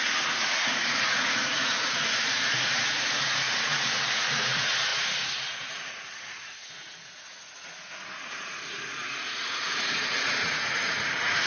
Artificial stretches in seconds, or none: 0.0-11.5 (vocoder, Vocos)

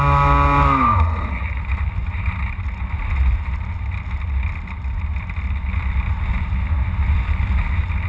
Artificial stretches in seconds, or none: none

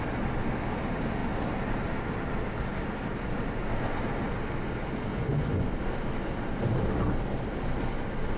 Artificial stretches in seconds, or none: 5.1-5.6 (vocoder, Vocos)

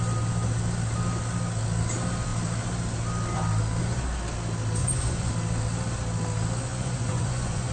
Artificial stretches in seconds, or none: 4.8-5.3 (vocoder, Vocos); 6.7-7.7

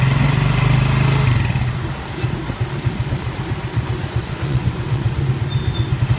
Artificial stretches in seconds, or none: 4.0-5.3 (vocoder, Vocos)

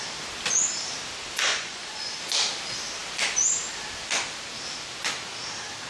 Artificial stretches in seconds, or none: 1.5-2.2 (vocoder, Vocos)

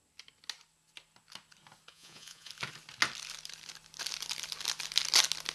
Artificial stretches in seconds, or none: 1.9-2.5 (vocoder, Vocos)